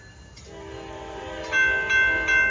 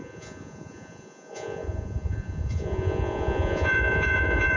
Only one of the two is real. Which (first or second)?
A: first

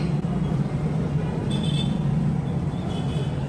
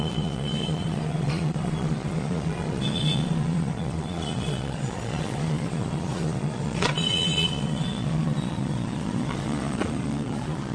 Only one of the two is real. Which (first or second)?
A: first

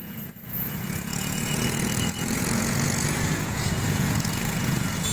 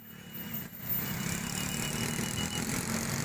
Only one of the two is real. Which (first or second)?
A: second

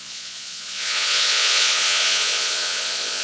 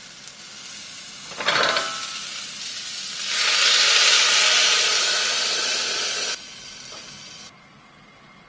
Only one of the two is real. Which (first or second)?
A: second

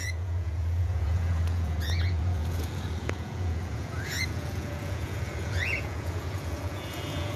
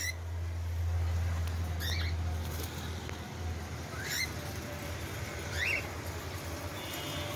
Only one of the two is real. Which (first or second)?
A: second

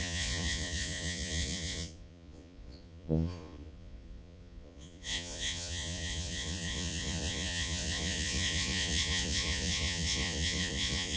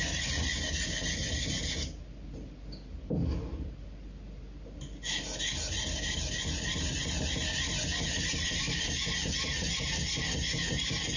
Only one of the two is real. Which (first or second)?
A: second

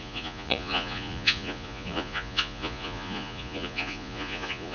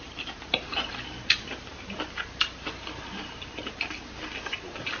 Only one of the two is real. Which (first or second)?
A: second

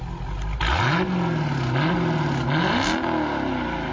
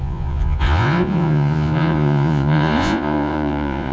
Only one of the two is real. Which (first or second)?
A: first